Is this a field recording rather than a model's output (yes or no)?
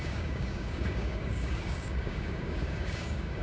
no